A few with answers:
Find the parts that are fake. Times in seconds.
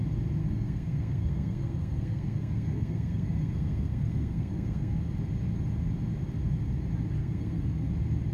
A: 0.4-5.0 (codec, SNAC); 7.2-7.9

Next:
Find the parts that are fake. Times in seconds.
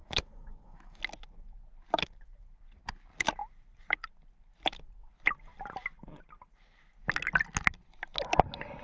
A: 0.0-1.0 (autoencoder, DAC-VAE)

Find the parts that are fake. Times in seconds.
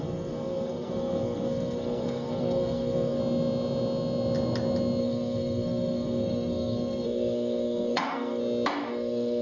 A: 0.0-3.2 (codec, SNAC); 5.0-8.4; 8.9-9.4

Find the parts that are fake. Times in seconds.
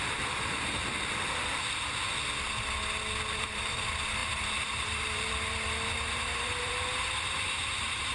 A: 0.0-0.8 (vocoder, BigVGAN v2); 3.3-8.1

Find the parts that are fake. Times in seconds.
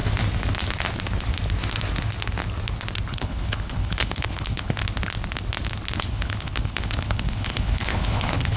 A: 3.1-4.8 (codec, HILCodec); 6.0-8.6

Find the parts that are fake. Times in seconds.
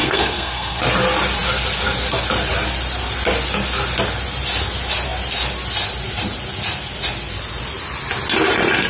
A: 0.0-0.8 (codec, SNAC)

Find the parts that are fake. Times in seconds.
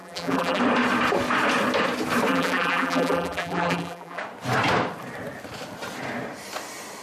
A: 0.0-0.6 (vocoder, BigVGAN v2); 2.3-4.2